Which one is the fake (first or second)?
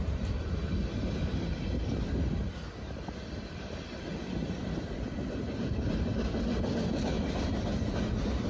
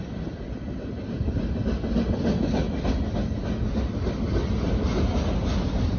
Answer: first